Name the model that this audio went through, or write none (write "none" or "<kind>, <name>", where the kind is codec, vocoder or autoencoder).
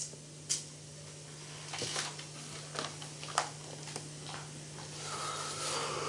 none